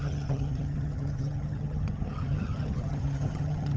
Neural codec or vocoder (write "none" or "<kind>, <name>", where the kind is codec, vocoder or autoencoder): vocoder, HiFi-GAN